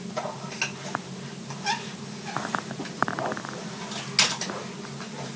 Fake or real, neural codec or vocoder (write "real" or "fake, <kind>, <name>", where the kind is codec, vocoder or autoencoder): real